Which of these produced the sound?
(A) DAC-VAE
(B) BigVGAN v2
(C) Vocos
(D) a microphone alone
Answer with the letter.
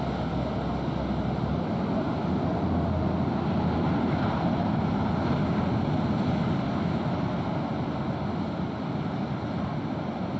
D